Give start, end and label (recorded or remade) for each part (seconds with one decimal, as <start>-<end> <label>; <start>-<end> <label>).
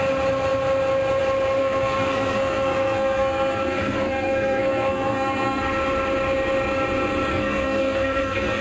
0.0-1.6 recorded; 1.6-5.6 remade; 5.6-7.3 recorded; 7.3-8.6 remade